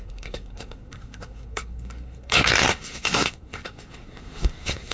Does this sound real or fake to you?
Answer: fake